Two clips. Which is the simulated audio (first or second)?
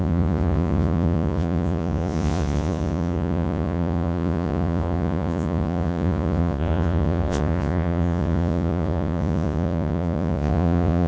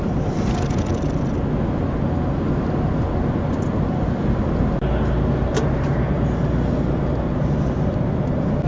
first